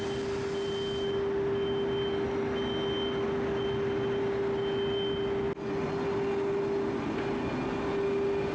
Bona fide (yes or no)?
yes